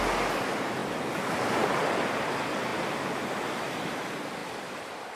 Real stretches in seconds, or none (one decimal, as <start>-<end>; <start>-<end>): 0.0-4.4